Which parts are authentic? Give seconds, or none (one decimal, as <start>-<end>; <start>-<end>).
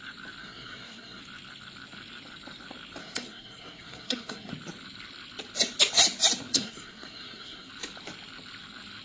0.0-0.4; 1.2-3.0; 4.5-6.5; 7.7-9.0